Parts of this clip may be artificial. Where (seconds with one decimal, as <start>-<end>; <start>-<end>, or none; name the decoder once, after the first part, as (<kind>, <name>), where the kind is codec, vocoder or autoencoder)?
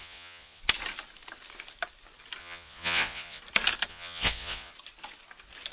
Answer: 0.0-0.6 (vocoder, Vocos); 2.4-3.4; 3.9-4.7